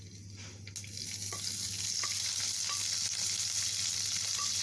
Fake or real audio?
real